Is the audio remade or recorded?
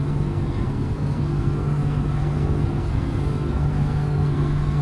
remade